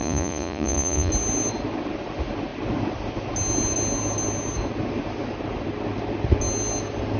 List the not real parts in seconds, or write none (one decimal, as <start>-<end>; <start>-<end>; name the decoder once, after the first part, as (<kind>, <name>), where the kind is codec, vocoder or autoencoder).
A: 0.0-1.1 (vocoder, Vocos)